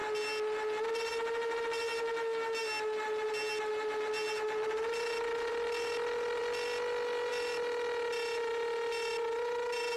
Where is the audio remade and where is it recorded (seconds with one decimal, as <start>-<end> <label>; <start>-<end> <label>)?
0.0-10.0 recorded